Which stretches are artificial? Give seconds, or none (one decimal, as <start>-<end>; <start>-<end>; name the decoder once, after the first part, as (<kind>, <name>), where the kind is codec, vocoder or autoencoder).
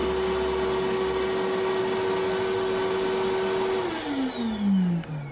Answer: none